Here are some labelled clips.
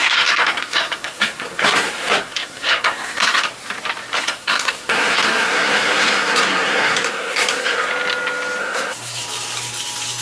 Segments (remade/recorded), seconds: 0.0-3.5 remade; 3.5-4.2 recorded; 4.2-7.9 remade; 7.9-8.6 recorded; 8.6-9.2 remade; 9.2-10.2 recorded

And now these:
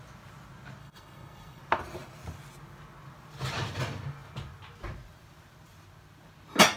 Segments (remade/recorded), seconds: 0.0-0.8 recorded; 0.8-1.6 remade; 1.6-6.8 recorded

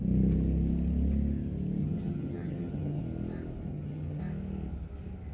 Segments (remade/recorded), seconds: 0.0-1.8 recorded; 1.8-3.0 remade; 3.0-3.7 recorded; 3.7-4.2 remade; 4.2-5.3 recorded

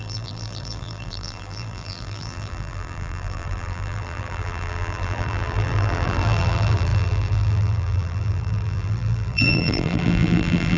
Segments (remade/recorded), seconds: 0.0-10.8 remade

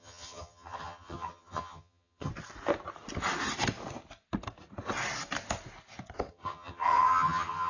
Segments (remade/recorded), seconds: 0.0-2.3 remade; 2.3-6.3 recorded; 6.3-7.7 remade

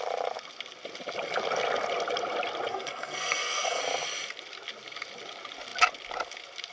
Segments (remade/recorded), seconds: 0.0-2.7 recorded; 2.7-3.8 remade; 3.8-6.7 recorded

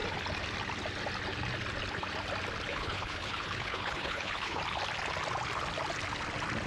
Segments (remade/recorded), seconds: 0.0-2.7 recorded; 2.7-4.6 remade; 4.6-6.7 recorded

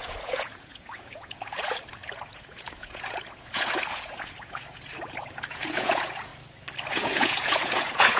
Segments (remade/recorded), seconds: 0.0-6.3 remade; 6.3-6.9 recorded; 6.9-8.2 remade